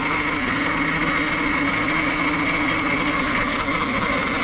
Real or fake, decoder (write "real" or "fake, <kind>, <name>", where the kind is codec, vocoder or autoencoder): real